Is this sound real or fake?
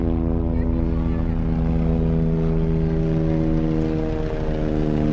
real